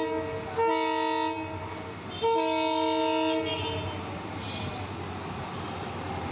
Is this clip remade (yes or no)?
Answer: no